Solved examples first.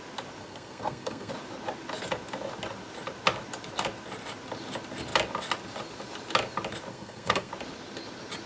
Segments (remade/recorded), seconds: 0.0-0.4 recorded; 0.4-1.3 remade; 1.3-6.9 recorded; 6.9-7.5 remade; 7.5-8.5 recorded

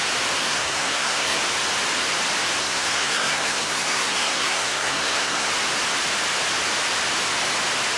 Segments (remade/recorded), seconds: 0.0-0.4 recorded; 0.4-1.4 remade; 1.4-2.6 recorded; 2.6-5.5 remade; 5.5-8.0 recorded